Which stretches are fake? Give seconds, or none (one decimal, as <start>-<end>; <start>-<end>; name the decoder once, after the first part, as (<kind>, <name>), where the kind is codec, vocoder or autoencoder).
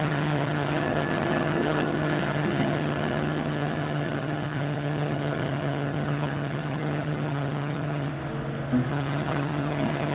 0.0-8.1 (vocoder, HiFi-GAN); 8.9-10.1